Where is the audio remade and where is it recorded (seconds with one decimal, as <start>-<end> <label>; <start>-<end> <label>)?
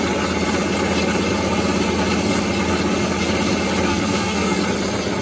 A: 0.0-3.9 recorded; 3.9-4.6 remade; 4.6-5.2 recorded